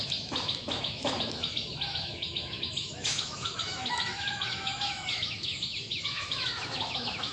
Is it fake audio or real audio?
fake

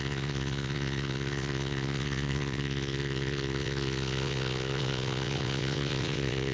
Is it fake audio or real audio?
fake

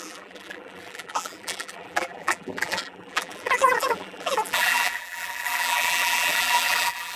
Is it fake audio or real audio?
fake